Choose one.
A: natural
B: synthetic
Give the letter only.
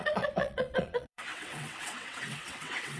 B